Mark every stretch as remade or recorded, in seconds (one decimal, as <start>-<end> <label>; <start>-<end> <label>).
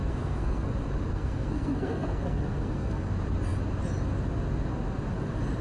0.0-0.7 remade; 0.7-1.1 recorded; 1.1-3.1 remade; 3.1-5.6 recorded